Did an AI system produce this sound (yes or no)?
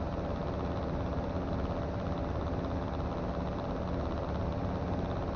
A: no